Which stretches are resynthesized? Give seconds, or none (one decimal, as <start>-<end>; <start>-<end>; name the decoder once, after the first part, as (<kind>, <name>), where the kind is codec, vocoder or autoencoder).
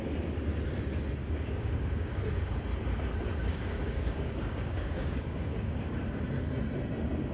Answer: 1.2-2.6 (codec, DAC); 3.4-6.0